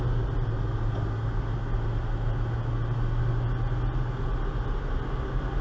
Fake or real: real